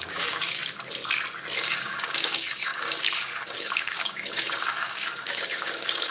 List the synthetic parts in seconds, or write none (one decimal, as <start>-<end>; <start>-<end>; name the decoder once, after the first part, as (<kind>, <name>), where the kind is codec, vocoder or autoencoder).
0.0-0.6 (codec, DAC); 1.6-6.1